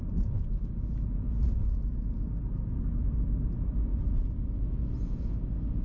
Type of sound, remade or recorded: remade